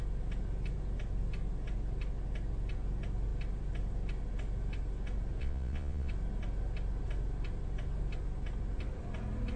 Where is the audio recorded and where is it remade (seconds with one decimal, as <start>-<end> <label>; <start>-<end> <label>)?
0.0-5.4 recorded; 5.4-6.1 remade; 6.1-9.6 recorded